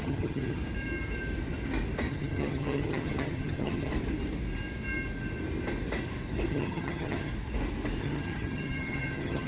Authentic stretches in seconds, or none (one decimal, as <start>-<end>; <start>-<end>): 0.6-2.1; 3.9-6.5; 7.3-8.0